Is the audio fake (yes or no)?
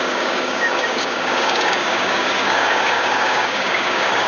yes